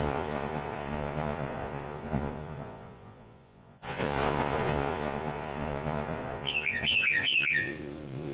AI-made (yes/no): yes